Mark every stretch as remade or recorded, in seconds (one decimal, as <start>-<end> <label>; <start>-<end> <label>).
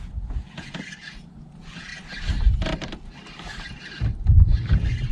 0.0-1.9 remade; 1.9-5.1 recorded